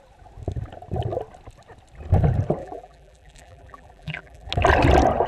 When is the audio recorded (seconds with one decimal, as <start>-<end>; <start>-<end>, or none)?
0.0-2.6; 4.5-5.3